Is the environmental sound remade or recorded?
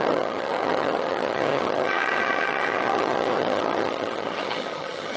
remade